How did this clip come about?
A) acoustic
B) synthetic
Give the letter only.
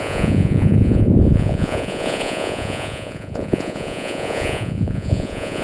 B